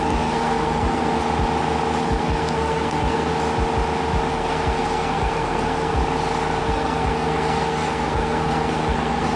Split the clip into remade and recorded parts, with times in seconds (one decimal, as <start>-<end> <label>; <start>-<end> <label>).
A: 0.0-1.2 remade; 1.2-2.0 recorded; 2.0-3.3 remade; 3.3-4.3 recorded; 4.3-6.0 remade; 6.0-6.6 recorded; 6.6-9.4 remade